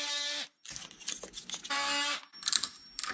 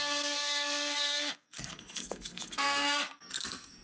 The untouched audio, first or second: first